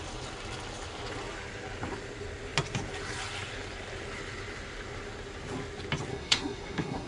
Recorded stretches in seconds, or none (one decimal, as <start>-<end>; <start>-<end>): 0.0-6.1